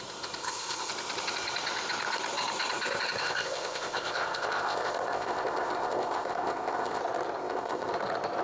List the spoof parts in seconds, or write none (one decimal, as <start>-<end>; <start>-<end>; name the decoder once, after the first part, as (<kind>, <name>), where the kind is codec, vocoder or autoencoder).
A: 0.4-0.9 (codec, ZipCodec); 3.2-7.0; 7.4-7.9